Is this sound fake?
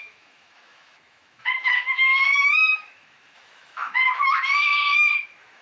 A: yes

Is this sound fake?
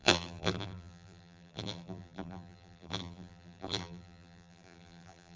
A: yes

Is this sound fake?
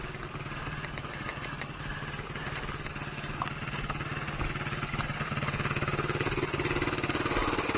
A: no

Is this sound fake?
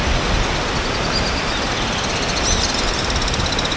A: no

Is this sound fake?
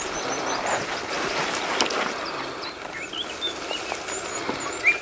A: no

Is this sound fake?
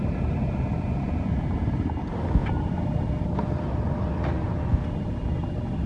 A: no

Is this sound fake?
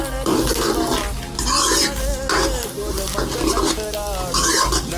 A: no